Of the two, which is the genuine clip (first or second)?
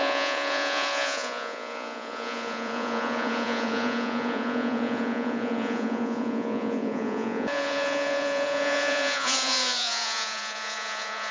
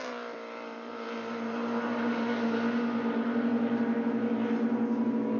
second